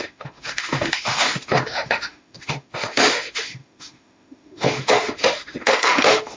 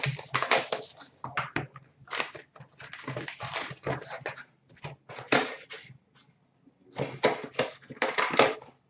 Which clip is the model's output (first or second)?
first